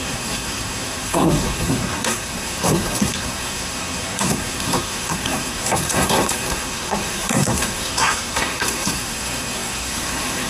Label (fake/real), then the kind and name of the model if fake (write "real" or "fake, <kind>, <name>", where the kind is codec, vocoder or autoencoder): fake, codec, SNAC